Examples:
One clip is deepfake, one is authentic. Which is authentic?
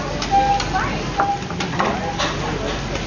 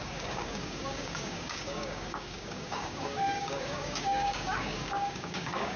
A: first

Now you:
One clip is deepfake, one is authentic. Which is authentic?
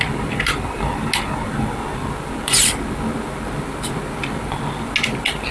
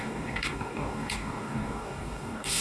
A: first